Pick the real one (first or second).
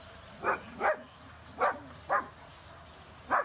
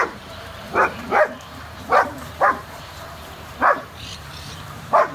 first